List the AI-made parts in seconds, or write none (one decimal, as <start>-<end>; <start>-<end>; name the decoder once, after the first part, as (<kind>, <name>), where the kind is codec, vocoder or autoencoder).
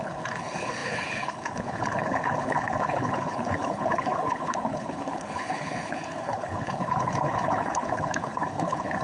0.0-9.0 (codec, HILCodec)